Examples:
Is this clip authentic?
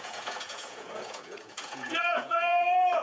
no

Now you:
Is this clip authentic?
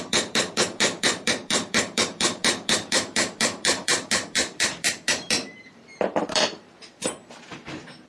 no